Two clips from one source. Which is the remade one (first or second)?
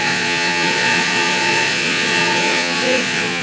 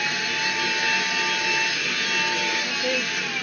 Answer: first